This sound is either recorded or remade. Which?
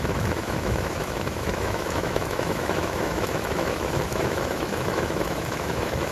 remade